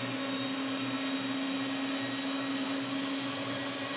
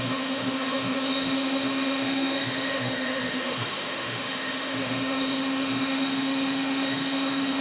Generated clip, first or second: second